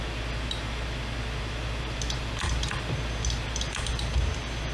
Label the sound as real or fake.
real